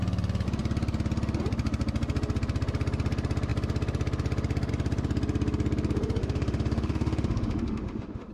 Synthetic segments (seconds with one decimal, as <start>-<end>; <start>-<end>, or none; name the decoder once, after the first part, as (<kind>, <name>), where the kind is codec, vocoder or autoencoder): 6.2-8.3 (autoencoder, DAC-VAE)